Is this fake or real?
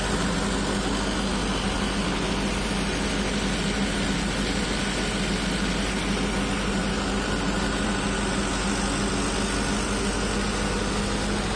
real